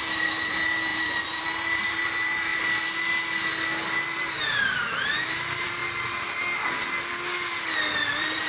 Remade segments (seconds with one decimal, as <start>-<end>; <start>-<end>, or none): 0.0-2.5; 4.4-5.8; 8.1-8.5

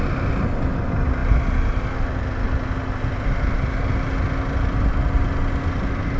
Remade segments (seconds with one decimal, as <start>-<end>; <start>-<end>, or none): none

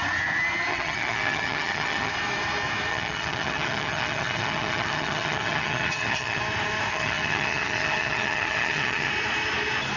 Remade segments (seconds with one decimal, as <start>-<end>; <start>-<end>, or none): 0.7-2.1; 2.9-6.4; 6.9-9.1

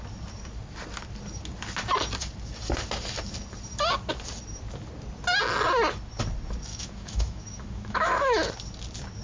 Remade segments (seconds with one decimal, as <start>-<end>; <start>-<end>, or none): 6.7-8.5

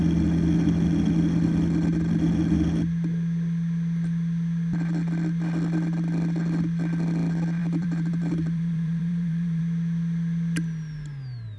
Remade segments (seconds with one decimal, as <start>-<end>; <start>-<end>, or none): 7.6-9.6